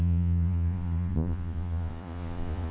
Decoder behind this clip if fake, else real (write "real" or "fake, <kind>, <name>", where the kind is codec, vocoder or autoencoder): fake, vocoder, Vocos